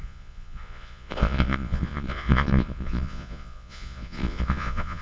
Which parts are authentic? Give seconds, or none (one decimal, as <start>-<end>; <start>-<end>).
none